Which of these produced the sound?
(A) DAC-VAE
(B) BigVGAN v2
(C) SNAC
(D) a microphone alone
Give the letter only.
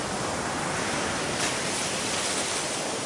D